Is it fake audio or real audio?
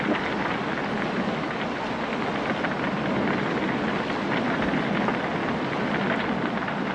real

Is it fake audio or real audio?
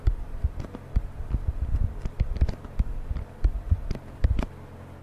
real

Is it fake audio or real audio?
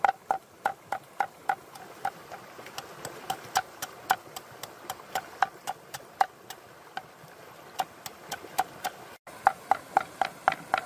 real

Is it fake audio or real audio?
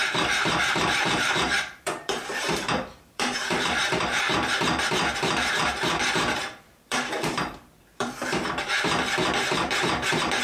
fake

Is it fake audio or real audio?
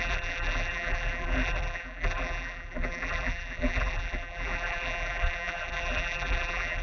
fake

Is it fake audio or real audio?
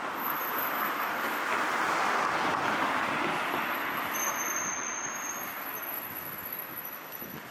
real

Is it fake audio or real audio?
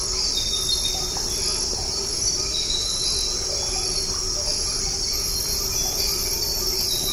real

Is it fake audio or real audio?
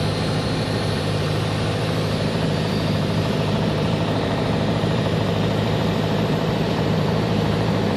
fake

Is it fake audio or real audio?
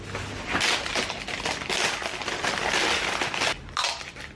real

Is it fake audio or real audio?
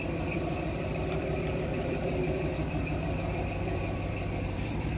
fake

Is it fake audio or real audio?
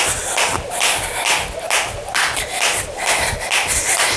real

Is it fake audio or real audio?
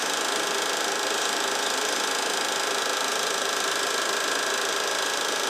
real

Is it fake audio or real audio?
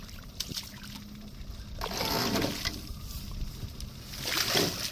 real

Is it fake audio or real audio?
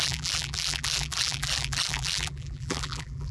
fake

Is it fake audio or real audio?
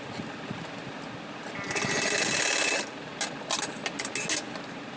real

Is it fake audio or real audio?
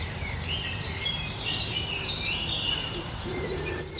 fake